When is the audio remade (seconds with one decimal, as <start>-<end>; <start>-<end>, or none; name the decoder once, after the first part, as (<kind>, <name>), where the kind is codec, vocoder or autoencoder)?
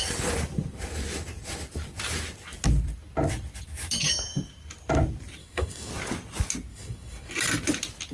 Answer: 5.4-5.9 (codec, DAC); 6.7-7.3